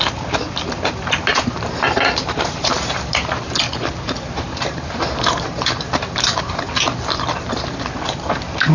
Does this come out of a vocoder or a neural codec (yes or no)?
yes